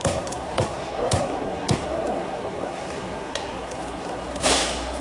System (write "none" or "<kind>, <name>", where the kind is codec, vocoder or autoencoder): codec, SNAC